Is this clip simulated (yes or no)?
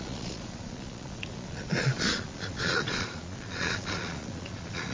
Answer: yes